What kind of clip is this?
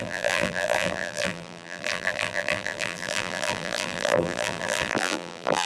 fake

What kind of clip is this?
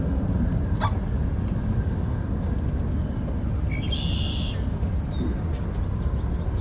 real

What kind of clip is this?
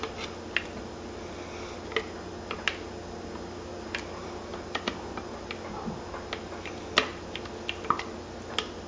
real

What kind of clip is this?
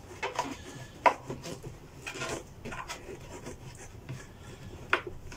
real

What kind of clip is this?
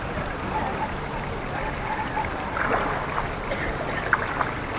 real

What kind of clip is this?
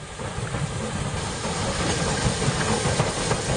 real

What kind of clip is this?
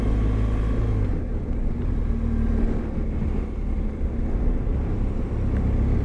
real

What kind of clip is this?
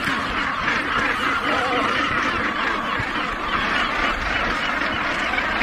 real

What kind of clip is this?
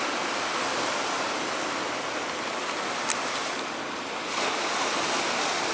real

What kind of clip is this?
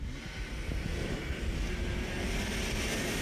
real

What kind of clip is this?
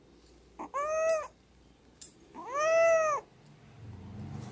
real